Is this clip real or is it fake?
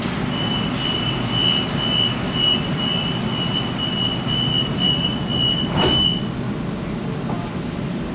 real